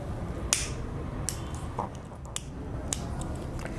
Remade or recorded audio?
recorded